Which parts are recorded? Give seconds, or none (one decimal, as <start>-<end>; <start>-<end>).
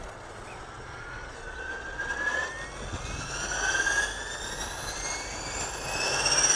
2.5-6.6